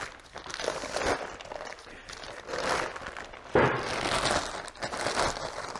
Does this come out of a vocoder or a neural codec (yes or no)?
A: no